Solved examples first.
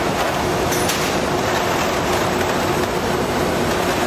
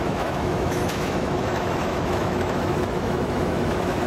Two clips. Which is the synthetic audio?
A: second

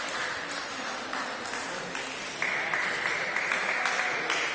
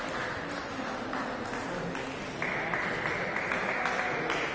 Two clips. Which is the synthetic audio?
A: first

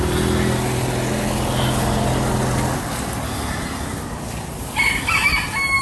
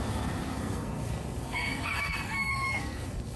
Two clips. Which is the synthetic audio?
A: second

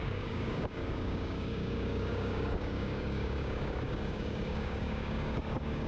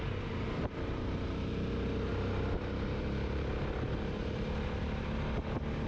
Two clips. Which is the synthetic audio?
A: first